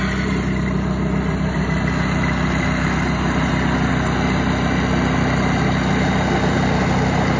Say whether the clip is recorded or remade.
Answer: recorded